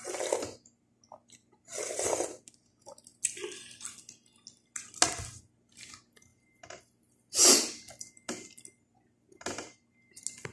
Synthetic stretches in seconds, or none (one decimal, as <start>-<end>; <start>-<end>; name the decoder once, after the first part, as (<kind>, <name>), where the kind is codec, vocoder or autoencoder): none